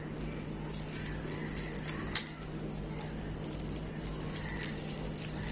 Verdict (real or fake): real